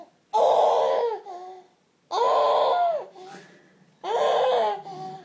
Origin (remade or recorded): recorded